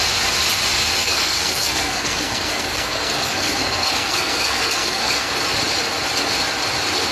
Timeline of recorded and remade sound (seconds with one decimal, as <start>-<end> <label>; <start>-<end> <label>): 0.0-1.0 recorded; 1.0-5.3 remade; 5.3-7.1 recorded